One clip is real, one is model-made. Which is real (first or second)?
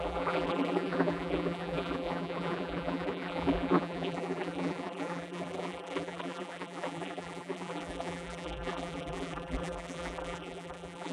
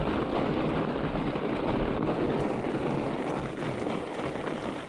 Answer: second